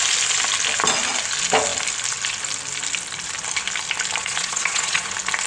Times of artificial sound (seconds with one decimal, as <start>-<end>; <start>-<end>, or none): 4.2-5.1